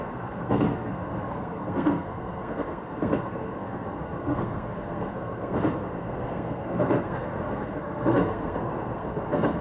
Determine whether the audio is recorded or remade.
remade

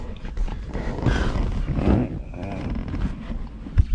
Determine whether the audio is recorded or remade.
recorded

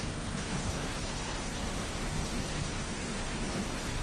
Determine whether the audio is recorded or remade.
remade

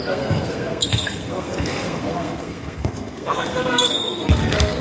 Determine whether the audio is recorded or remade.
remade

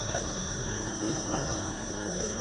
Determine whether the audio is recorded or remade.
remade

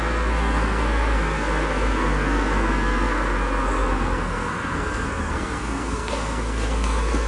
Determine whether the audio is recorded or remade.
remade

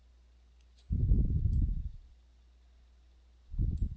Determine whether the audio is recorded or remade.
recorded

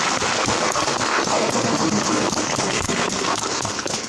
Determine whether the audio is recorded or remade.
remade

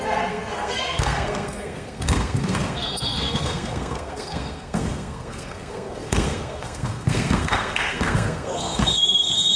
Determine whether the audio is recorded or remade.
remade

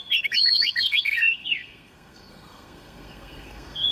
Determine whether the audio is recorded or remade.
remade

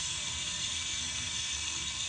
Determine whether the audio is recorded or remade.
remade